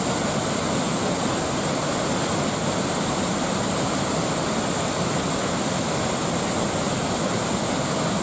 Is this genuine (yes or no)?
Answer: yes